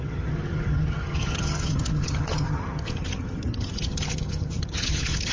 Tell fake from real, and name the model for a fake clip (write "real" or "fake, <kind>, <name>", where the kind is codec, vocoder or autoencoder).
fake, vocoder, HiFi-GAN